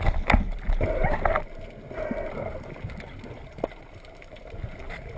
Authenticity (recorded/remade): recorded